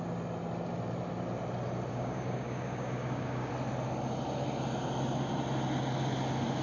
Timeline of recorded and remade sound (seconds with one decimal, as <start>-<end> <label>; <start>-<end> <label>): 0.0-1.9 recorded; 1.9-3.5 remade; 3.5-6.6 recorded